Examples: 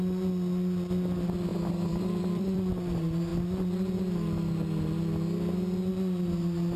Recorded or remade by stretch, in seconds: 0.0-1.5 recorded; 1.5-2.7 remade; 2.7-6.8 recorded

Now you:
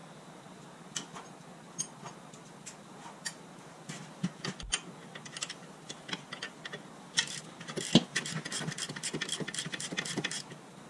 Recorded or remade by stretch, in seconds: 0.0-10.9 recorded

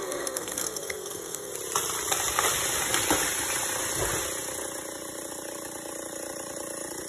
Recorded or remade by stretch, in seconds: 0.0-1.5 remade; 1.5-7.1 recorded

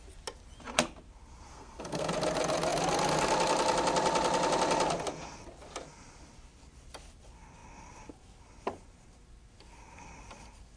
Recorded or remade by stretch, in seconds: 0.0-1.5 recorded; 1.5-2.1 remade; 2.1-10.8 recorded

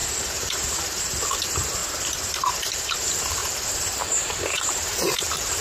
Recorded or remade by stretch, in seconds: 0.0-1.8 remade; 1.8-2.5 recorded; 2.5-3.4 remade; 3.4-4.0 recorded; 4.0-5.6 remade

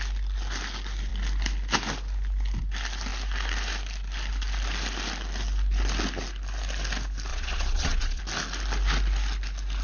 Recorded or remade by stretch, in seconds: 0.0-7.3 recorded; 7.3-8.2 remade; 8.2-9.8 recorded